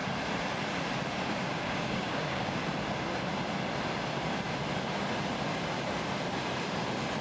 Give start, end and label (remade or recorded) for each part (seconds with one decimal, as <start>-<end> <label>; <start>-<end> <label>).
0.0-1.2 recorded; 1.2-2.6 remade; 2.6-7.2 recorded